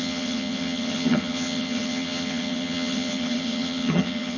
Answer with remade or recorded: remade